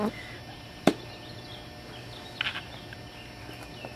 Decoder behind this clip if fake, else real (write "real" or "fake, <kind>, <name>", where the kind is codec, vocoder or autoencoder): real